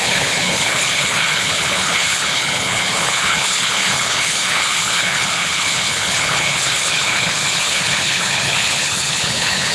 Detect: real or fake fake